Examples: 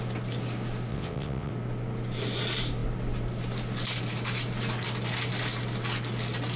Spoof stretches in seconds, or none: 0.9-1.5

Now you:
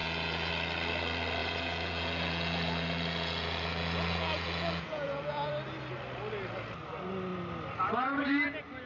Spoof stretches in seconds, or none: 0.0-0.5; 1.4-5.5

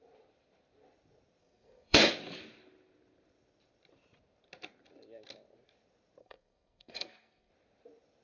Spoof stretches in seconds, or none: 1.4-2.1; 6.2-7.5

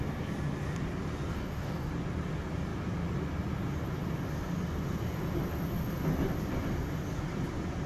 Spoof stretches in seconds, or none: 1.3-1.9

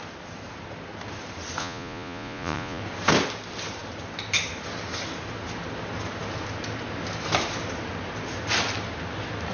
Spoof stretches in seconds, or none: 1.6-2.8

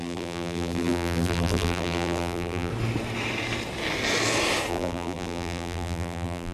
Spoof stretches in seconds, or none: 0.0-2.7; 4.7-6.5

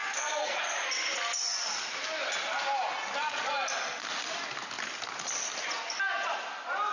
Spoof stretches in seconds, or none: 0.0-0.6

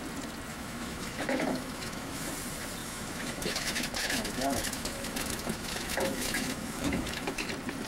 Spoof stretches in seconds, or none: 0.5-2.3; 2.8-7.5